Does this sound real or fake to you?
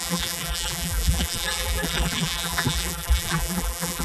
fake